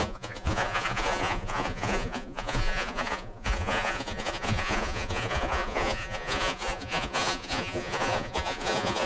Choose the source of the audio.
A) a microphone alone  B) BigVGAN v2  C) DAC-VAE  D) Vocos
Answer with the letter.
D